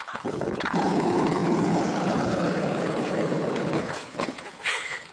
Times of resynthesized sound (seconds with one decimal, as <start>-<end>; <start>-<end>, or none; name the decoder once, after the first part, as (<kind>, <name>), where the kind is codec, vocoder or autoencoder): 0.0-5.1 (codec, HILCodec)

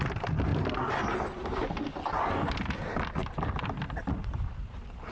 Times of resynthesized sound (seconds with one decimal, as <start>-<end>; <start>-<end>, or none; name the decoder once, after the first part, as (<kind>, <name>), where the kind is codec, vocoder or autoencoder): none

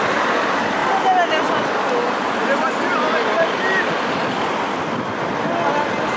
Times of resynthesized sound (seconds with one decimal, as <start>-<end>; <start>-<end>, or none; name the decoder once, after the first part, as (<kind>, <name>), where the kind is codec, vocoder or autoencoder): none

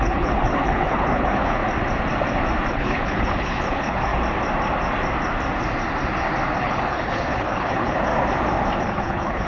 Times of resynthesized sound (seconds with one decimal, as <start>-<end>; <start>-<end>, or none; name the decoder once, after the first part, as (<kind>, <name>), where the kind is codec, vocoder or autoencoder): 0.0-1.6 (codec, HILCodec); 2.7-4.1; 6.6-8.1; 8.8-9.5

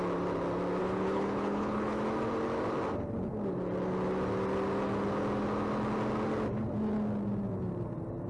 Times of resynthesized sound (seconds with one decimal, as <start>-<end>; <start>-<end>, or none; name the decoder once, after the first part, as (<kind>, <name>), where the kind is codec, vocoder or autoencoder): 0.8-2.0 (codec, HILCodec)

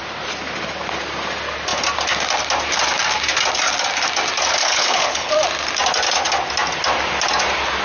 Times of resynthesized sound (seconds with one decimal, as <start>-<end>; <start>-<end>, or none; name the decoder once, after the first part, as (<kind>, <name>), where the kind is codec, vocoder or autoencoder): 4.6-5.3 (codec, HILCodec)